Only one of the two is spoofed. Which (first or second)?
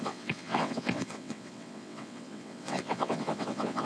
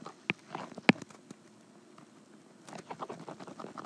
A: first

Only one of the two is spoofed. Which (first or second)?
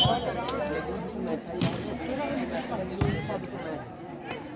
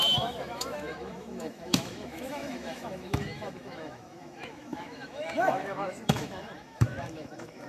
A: second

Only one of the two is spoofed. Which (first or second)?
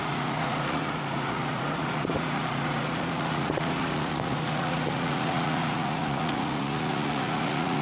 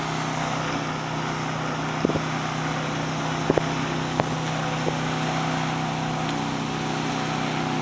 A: first